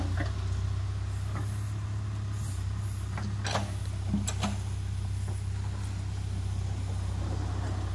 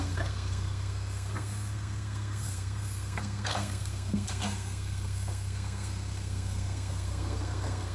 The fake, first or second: second